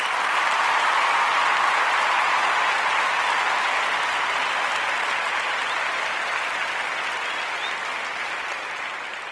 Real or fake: real